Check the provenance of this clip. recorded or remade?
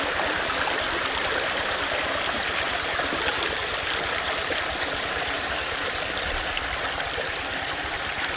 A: recorded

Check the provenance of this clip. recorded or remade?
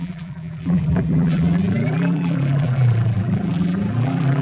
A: remade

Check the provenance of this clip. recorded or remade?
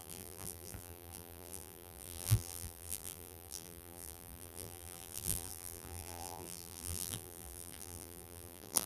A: remade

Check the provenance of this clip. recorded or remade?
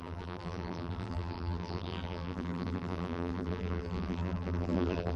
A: remade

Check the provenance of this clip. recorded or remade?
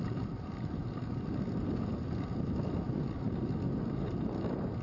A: recorded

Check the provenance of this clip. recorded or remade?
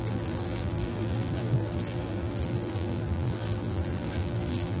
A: remade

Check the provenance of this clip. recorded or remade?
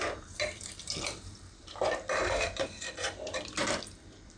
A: remade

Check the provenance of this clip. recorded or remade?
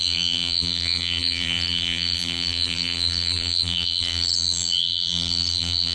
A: remade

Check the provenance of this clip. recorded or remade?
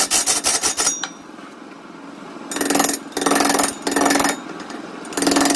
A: recorded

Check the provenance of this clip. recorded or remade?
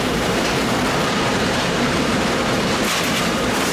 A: remade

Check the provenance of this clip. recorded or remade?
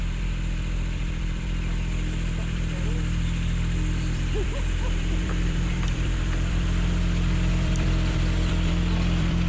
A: remade